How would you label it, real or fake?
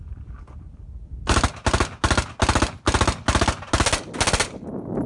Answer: real